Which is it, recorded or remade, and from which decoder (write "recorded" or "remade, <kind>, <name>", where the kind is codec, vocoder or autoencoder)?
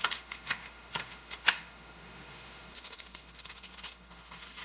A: remade, autoencoder, DAC-VAE